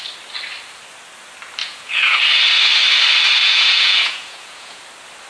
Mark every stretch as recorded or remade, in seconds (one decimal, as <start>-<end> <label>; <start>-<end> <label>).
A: 0.0-1.6 recorded; 1.6-2.2 remade; 2.2-3.4 recorded; 3.4-4.8 remade; 4.8-5.3 recorded